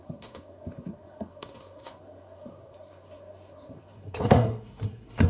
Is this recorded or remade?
remade